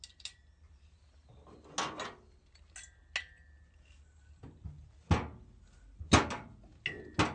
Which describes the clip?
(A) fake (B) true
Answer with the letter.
B